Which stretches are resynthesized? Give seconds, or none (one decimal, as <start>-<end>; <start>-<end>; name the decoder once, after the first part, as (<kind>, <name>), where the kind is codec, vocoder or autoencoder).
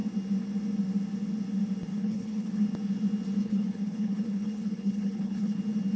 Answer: 1.9-2.6 (codec, HILCodec); 3.4-5.6